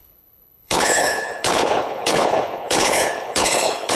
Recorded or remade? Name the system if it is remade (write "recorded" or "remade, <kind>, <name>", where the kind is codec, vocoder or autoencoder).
remade, codec, HILCodec